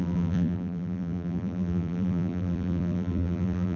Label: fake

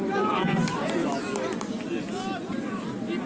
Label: real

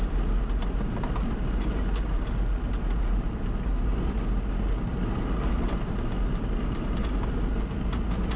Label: real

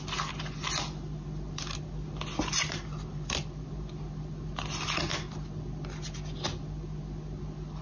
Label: real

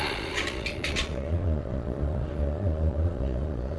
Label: fake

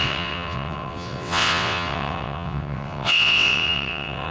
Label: fake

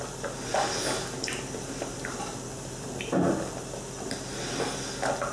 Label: real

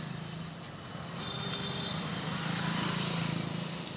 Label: real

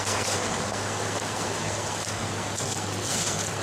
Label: fake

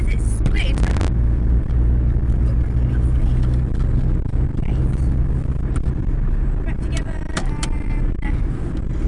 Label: real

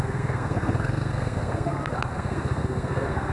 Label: fake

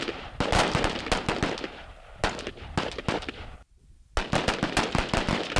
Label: real